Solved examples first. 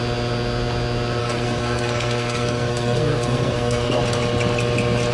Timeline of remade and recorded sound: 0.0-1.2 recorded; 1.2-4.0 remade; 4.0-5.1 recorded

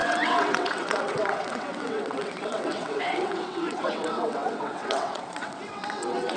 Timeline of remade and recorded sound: 0.0-6.4 remade